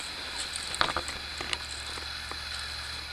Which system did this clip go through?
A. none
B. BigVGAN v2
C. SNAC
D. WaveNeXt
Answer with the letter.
A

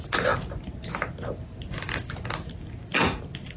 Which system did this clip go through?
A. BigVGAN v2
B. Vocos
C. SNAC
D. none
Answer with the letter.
D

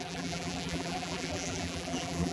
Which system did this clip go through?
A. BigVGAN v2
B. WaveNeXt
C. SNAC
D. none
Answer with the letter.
A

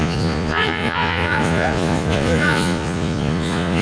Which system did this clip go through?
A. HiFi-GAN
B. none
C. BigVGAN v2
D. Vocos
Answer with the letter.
D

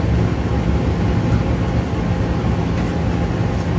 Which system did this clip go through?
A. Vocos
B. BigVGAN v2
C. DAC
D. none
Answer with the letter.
D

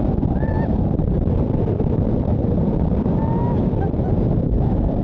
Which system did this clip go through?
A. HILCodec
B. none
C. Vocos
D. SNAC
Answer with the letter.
B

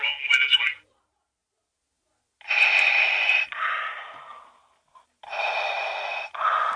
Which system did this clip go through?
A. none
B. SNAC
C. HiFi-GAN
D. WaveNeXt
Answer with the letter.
A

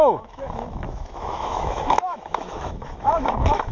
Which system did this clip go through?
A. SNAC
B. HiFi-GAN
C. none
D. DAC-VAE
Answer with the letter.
D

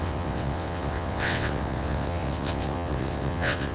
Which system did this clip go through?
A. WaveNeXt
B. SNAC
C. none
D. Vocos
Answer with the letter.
A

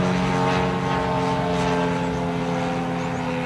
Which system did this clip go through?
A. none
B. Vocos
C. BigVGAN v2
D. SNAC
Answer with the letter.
A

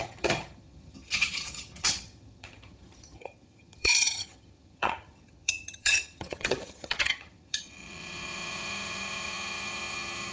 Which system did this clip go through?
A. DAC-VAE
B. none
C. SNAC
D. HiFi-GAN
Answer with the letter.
D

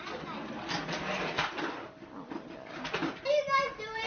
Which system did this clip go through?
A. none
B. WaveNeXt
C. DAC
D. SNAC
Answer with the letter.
A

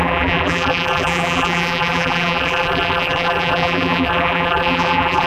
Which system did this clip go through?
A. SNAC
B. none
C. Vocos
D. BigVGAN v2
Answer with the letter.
D